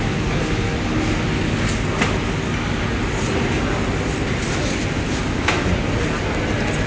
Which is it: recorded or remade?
recorded